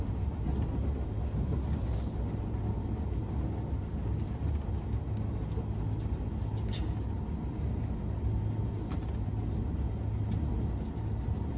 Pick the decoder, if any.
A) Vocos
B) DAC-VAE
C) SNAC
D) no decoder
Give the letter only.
D